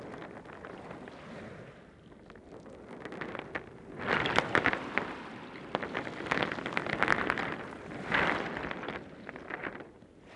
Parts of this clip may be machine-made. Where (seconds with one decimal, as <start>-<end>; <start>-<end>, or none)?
none